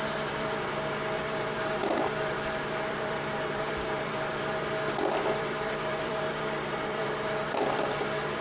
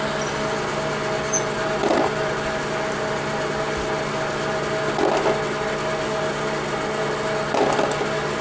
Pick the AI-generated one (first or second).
first